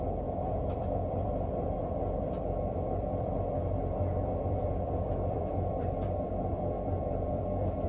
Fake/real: fake